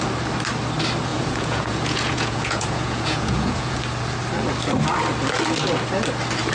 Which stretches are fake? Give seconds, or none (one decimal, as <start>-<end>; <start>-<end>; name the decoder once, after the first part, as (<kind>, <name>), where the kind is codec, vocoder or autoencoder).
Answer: 1.1-3.8 (vocoder, Vocos)